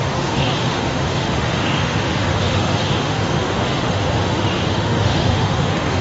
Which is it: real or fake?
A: fake